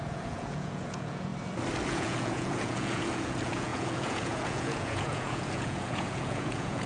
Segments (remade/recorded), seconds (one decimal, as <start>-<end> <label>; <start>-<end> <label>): 0.0-1.3 remade; 1.3-1.9 recorded; 1.9-6.9 remade